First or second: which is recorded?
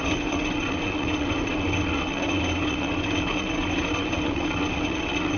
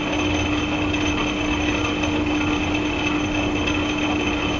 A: second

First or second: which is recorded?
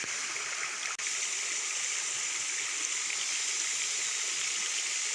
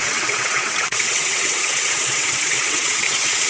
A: first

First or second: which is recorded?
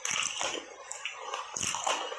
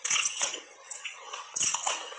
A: first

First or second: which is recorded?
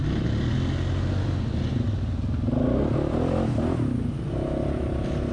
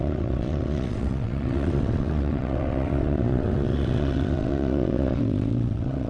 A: first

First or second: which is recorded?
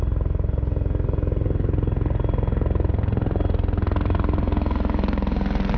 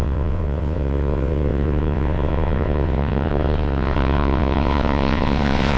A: first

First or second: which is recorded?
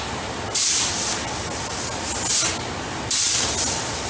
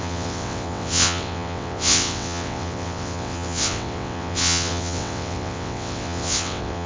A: first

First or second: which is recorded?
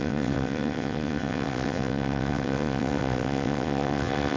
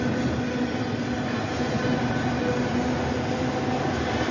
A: second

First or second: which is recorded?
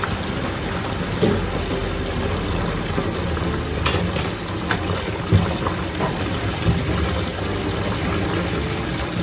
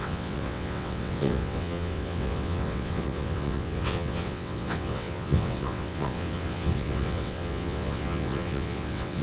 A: first